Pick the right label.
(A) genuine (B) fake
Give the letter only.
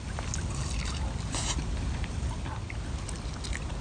A